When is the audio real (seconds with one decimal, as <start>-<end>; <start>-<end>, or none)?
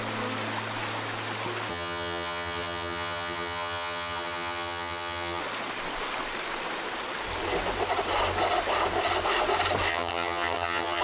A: 0.0-1.7; 5.4-9.9